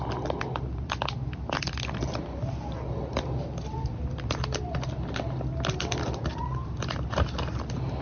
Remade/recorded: recorded